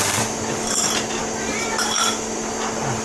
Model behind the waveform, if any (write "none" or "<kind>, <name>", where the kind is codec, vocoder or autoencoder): none